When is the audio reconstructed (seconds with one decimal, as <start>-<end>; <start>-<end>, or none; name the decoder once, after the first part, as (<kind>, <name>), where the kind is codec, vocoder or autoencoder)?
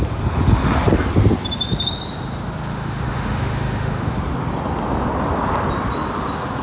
2.7-4.2 (autoencoder, DAC-VAE)